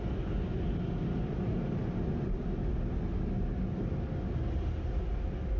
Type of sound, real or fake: real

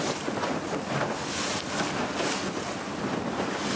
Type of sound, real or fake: real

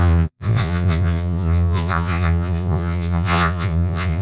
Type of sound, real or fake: fake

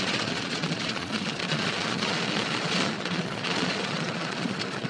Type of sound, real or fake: fake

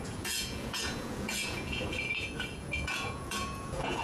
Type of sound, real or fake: fake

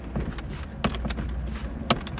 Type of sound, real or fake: real